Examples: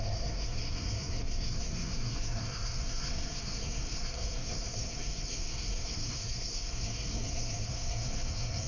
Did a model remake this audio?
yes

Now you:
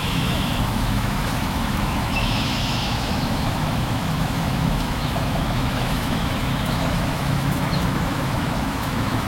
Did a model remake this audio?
yes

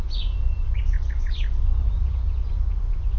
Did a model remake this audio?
yes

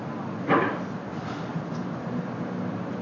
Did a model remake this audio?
no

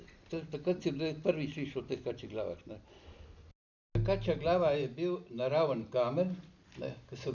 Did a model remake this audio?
no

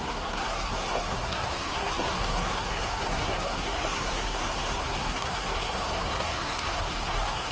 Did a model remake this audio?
yes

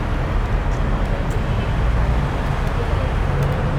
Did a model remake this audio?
no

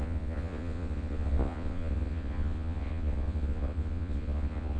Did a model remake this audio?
yes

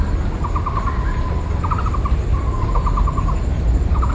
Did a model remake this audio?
no